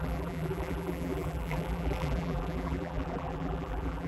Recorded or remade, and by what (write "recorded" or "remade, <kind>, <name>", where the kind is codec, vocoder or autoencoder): remade, vocoder, BigVGAN v2